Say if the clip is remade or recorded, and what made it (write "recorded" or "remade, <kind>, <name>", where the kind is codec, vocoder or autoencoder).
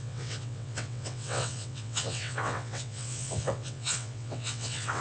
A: remade, vocoder, WaveNeXt